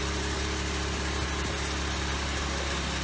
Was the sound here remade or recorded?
recorded